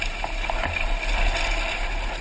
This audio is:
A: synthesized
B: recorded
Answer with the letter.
B